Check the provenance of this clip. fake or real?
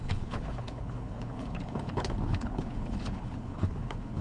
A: fake